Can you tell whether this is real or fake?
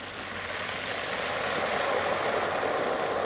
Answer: real